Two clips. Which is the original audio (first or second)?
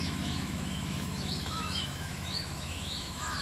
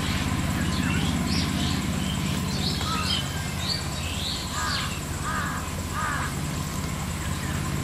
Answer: second